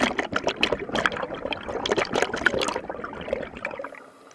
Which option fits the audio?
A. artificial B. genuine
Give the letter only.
B